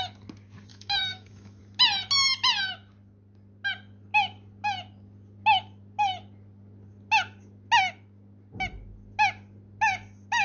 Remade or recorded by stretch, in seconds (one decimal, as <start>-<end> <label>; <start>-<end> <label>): 0.0-0.7 recorded; 0.7-1.6 remade; 1.6-10.4 recorded